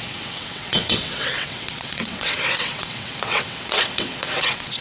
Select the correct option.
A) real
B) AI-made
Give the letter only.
B